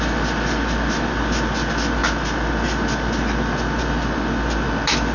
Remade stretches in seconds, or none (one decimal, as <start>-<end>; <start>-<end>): none

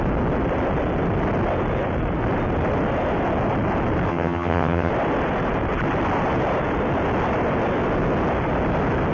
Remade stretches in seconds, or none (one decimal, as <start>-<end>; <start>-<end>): 4.1-4.9